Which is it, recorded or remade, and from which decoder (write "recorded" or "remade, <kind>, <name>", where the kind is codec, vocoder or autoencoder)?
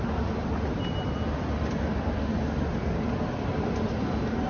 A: recorded